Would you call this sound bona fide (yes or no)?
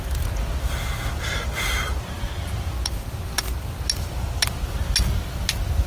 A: yes